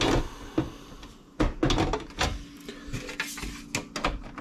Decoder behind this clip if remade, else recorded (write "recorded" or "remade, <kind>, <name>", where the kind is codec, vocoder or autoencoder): recorded